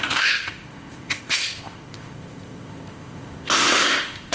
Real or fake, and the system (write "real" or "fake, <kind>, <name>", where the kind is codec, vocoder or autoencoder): fake, codec, ZipCodec